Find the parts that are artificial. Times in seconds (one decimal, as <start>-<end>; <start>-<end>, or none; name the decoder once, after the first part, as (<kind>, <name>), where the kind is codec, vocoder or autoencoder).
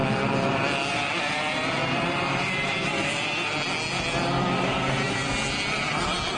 none